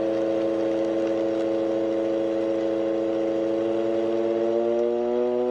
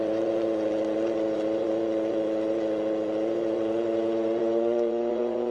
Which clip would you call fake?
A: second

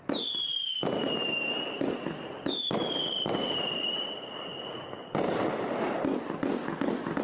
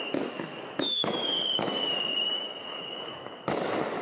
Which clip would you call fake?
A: second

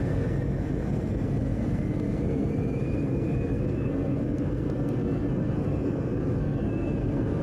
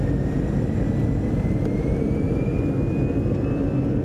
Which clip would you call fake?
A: first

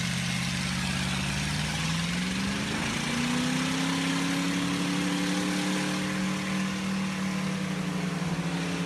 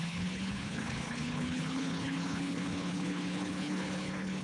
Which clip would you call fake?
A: second